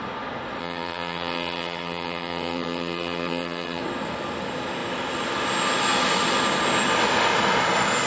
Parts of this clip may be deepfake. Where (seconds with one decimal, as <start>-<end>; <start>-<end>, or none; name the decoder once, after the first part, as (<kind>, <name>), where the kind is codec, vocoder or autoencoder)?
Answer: 0.6-3.8 (vocoder, HiFi-GAN)